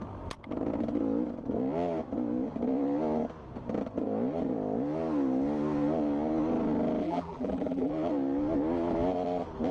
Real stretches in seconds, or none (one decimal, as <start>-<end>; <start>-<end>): 0.0-7.0; 7.9-9.7